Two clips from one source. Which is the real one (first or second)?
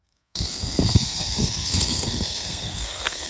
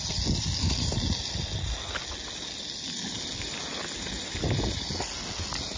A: second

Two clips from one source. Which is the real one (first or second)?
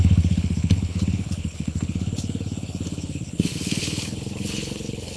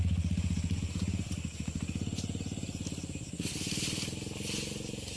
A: second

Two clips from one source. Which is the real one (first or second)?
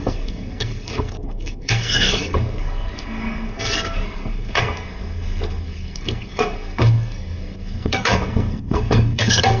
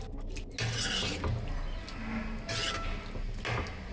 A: second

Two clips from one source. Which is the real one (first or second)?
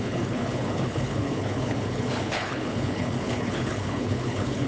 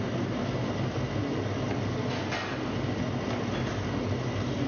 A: second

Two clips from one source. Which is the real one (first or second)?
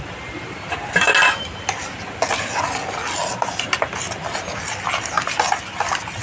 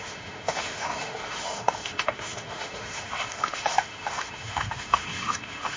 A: first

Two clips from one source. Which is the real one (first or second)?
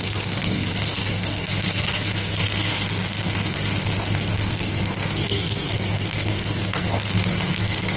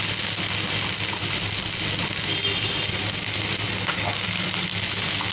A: second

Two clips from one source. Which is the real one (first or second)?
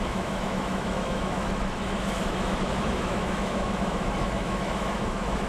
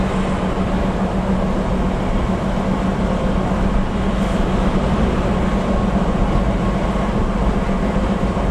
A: second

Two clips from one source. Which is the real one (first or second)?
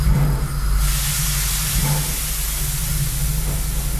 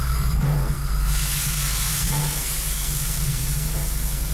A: first